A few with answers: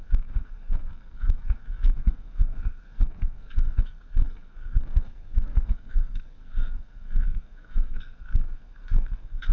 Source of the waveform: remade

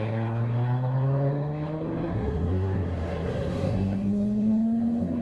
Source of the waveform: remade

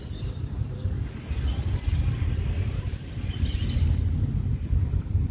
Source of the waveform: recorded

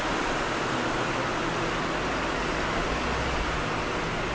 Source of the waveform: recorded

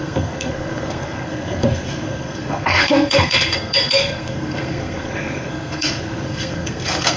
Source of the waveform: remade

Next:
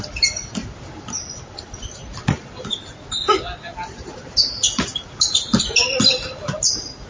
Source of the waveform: recorded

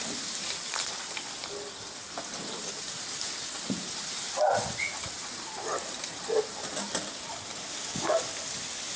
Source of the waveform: recorded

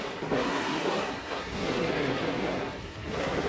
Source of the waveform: remade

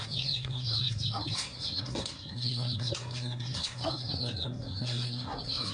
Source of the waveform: remade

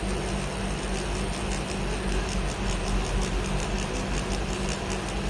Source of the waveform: recorded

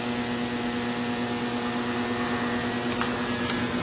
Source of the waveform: recorded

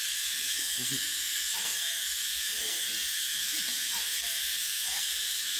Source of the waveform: remade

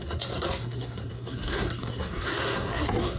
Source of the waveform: remade